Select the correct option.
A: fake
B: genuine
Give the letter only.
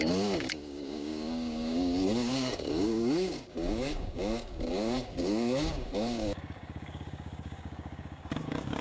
A